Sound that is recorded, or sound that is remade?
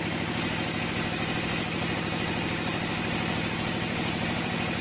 recorded